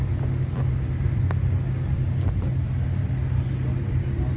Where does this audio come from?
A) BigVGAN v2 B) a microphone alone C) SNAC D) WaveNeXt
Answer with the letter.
B